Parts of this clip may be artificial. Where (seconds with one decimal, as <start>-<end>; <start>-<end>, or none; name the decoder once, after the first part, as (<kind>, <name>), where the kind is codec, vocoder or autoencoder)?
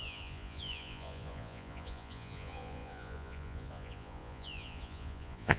0.0-5.6 (vocoder, Vocos)